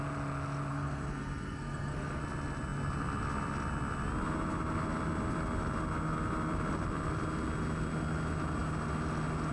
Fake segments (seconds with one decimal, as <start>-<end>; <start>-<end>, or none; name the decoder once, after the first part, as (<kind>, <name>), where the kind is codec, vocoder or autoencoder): 0.7-2.2 (codec, SNAC)

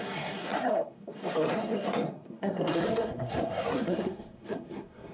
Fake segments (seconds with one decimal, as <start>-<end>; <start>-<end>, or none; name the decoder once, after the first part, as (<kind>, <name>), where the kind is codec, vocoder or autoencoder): 0.0-5.1 (codec, SNAC)

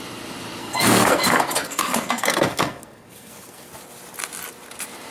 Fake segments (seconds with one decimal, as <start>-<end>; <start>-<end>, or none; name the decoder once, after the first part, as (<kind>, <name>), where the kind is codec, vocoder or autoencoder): 0.6-3.7 (codec, SNAC)

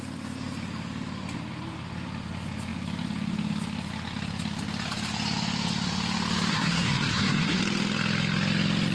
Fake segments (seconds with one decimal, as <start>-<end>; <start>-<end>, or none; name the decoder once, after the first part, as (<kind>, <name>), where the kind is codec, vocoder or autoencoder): 6.5-7.6 (codec, SNAC)

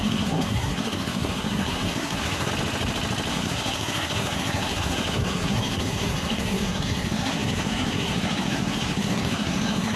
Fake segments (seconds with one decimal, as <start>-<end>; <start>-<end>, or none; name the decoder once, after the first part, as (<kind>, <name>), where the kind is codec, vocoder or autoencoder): 0.0-2.5 (codec, SNAC); 3.3-10.0

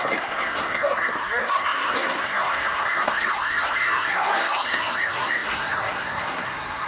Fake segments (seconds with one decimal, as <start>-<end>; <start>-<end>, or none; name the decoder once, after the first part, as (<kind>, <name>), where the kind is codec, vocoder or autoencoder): 0.0-6.9 (codec, SNAC)

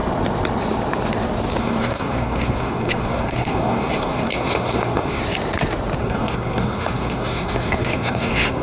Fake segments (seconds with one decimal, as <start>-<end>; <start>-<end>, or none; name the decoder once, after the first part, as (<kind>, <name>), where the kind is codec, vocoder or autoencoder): 1.6-5.2 (codec, SNAC); 6.0-8.6

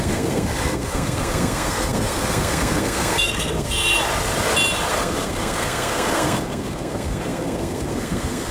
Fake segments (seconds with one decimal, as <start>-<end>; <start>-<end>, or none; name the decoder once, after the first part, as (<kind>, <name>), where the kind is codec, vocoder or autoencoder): 0.0-4.0 (codec, SNAC); 4.9-8.5